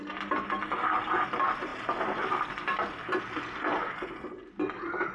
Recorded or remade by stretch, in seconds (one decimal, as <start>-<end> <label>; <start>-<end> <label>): 0.0-5.1 recorded